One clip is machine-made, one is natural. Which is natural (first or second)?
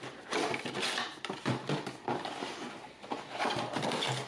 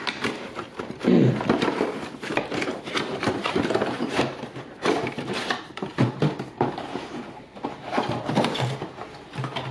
first